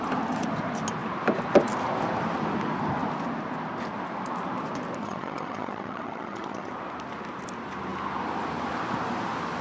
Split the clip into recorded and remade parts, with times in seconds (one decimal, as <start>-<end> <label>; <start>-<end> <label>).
0.0-5.0 recorded; 5.0-6.7 remade; 6.7-9.6 recorded

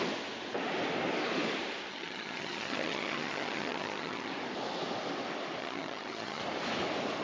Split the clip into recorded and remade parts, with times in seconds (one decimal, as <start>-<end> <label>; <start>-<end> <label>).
0.0-1.9 recorded; 1.9-4.3 remade; 4.3-5.6 recorded; 5.6-6.4 remade; 6.4-7.2 recorded

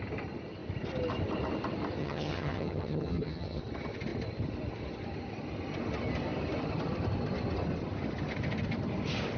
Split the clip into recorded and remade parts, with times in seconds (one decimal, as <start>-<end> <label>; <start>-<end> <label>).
0.0-2.0 recorded; 2.0-3.6 remade; 3.6-9.4 recorded

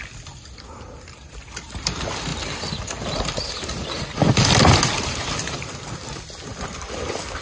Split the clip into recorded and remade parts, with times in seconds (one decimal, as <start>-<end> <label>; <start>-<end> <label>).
0.0-7.4 recorded